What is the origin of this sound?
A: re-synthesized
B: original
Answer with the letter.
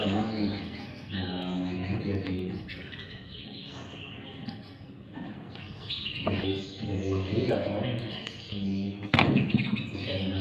A